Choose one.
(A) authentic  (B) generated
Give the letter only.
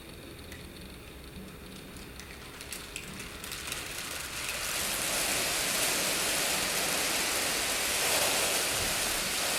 A